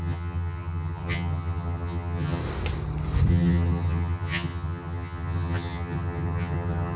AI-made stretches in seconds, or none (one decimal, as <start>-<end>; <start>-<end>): 0.0-2.4; 3.3-7.0